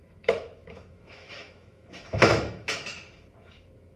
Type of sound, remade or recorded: remade